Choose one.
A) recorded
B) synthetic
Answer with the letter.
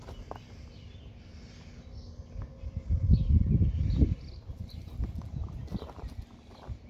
A